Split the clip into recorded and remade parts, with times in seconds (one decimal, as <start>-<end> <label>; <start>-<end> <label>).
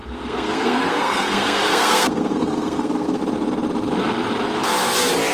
0.0-3.2 remade; 3.2-5.3 recorded